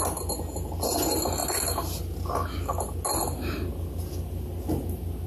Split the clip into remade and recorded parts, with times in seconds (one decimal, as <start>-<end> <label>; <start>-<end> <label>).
0.0-5.3 recorded